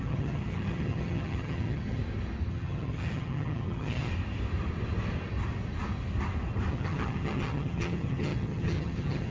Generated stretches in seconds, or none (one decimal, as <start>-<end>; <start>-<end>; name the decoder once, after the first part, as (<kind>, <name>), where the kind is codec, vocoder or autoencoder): 0.0-2.0 (vocoder, HiFi-GAN); 2.5-4.1; 6.7-9.3